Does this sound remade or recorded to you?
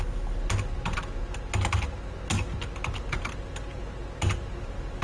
recorded